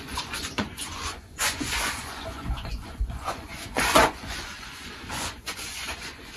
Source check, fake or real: fake